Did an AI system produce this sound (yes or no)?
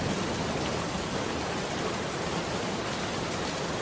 no